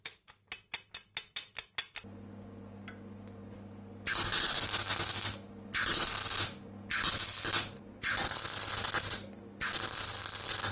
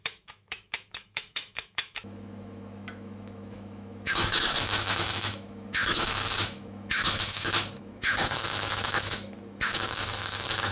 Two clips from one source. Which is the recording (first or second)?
first